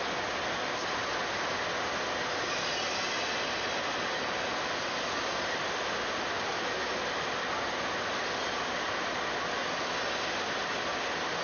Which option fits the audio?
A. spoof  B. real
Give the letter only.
B